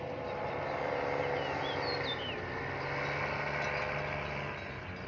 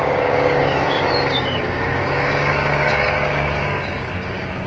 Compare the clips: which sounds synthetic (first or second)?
second